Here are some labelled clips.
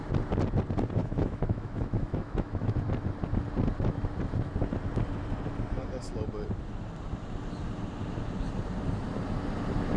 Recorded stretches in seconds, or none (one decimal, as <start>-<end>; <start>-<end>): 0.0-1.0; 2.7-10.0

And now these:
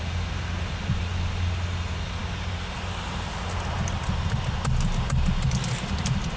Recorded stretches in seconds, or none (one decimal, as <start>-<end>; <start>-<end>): 0.0-6.4

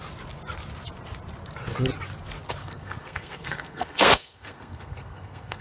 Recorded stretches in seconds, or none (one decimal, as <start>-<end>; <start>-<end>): 0.0-2.6

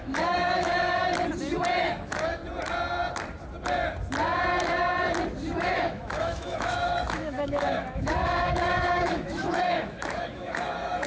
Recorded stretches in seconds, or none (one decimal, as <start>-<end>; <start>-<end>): 1.0-1.8; 2.4-5.6

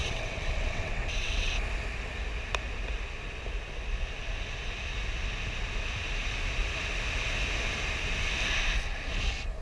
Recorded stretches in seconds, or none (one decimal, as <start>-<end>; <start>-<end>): 1.5-9.6

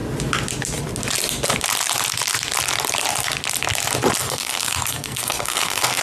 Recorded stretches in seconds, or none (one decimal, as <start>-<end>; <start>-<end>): 0.0-4.2